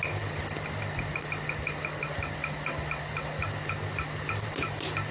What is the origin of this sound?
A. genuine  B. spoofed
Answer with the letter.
A